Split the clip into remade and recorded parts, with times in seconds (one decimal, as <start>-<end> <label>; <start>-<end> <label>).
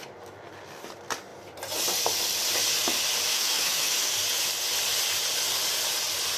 0.0-3.3 recorded; 3.3-4.1 remade; 4.1-6.4 recorded